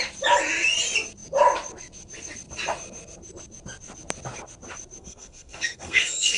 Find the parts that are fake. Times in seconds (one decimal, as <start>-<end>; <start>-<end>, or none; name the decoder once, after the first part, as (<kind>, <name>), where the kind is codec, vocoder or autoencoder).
5.0-6.4 (codec, SNAC)